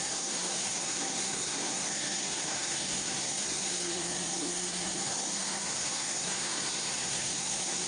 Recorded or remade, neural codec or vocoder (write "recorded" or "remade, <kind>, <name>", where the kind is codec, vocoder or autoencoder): remade, codec, SNAC